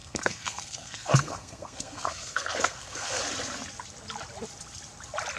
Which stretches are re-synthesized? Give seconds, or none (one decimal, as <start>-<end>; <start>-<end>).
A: 0.0-3.2